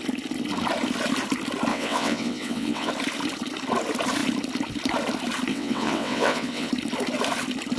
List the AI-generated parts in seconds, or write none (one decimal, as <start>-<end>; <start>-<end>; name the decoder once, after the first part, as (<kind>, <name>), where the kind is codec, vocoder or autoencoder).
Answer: 1.7-2.9 (vocoder, WaveNeXt); 5.5-6.7